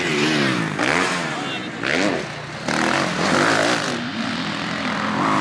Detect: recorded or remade recorded